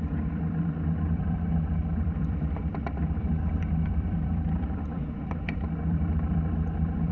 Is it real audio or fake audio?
fake